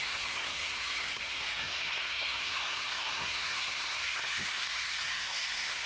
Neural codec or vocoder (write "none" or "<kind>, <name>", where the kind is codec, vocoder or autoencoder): codec, SNAC